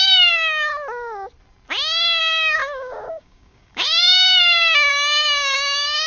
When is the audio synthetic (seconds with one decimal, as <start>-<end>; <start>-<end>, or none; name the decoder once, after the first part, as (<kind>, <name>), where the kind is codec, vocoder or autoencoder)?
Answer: 0.0-0.7 (codec, DAC); 2.2-6.1